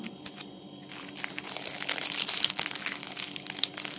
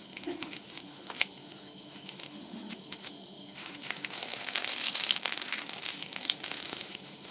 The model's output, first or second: second